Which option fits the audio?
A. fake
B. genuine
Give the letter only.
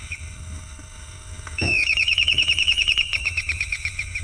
A